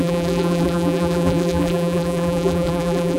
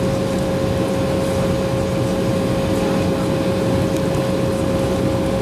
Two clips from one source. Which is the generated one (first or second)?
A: first